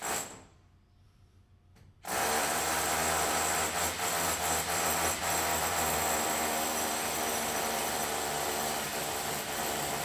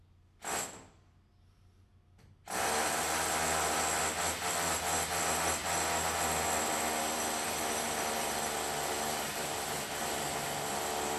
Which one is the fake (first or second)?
first